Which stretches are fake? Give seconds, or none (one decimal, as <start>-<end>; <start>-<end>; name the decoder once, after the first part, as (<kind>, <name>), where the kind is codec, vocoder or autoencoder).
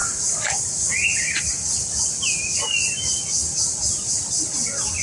none